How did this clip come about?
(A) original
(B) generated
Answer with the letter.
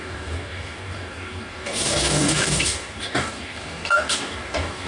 B